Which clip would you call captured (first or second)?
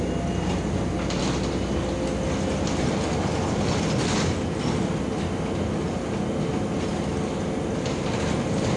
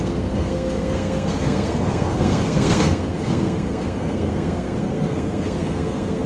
first